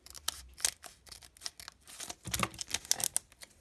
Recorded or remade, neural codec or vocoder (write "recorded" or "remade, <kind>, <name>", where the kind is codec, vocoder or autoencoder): recorded